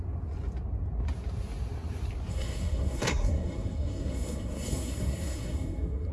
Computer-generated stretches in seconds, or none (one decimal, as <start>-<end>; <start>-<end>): 2.3-6.1